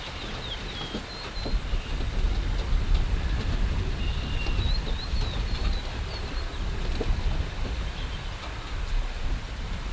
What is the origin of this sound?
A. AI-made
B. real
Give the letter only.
B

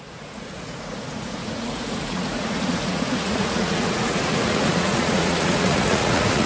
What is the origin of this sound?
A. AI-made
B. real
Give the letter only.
A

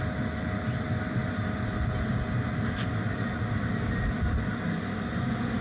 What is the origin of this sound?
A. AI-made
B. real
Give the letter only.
B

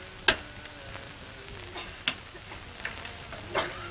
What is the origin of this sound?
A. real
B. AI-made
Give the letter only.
A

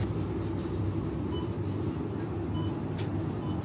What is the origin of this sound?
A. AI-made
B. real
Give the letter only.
B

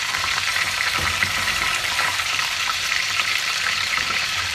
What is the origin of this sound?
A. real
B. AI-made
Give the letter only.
B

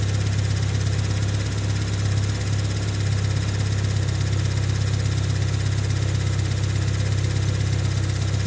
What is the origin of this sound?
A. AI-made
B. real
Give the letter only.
B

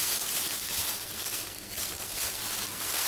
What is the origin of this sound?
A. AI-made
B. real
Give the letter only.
A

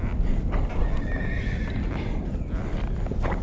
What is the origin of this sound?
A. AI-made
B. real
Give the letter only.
B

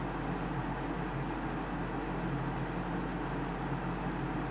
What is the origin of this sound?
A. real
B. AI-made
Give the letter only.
A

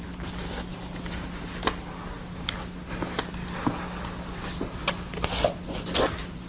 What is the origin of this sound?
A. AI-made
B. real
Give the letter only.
B